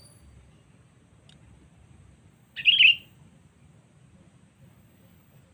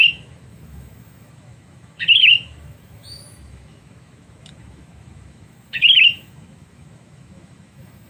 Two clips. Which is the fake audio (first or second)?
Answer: second